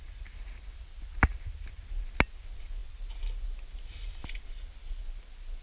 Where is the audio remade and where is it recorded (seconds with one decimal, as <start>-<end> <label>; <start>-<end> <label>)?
0.0-5.6 recorded